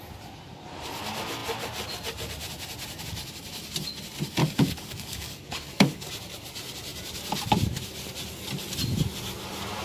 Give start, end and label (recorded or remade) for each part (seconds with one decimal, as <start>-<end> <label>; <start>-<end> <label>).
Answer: 0.0-4.4 recorded; 4.4-6.1 remade; 6.1-9.8 recorded